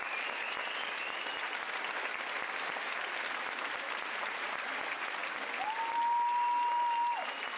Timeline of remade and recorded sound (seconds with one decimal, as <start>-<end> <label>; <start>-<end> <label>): 0.0-7.6 recorded